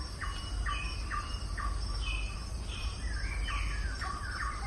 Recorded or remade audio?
recorded